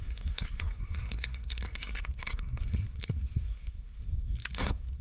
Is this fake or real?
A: fake